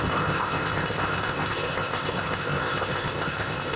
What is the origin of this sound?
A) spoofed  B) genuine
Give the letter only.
A